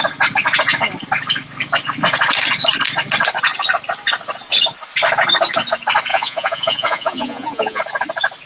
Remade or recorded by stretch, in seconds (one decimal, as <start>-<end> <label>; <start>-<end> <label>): 0.0-6.1 recorded; 6.1-7.8 remade; 7.8-8.5 recorded